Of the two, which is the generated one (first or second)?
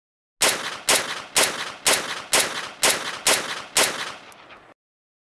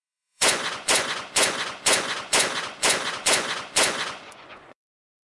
second